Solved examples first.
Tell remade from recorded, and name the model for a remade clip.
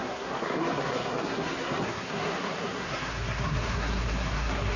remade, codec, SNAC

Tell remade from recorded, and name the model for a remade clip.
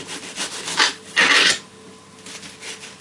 recorded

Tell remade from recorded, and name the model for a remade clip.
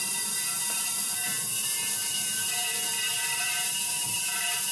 remade, vocoder, BigVGAN v2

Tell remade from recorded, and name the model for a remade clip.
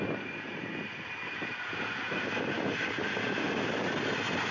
recorded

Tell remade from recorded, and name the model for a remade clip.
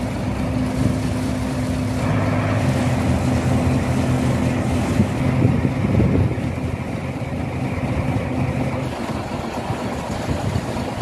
recorded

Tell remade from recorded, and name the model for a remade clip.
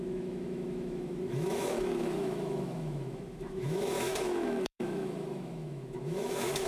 remade, autoencoder, DAC-VAE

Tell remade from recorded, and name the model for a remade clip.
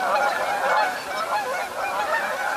recorded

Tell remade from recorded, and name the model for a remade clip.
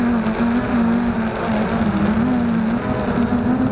recorded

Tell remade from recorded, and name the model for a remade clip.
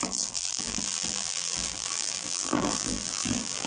remade, vocoder, BigVGAN v2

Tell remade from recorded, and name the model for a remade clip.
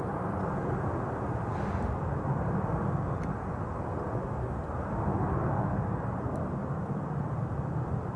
recorded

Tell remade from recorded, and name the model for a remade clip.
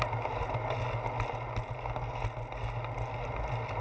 recorded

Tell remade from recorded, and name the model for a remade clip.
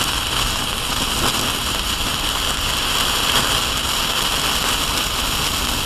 recorded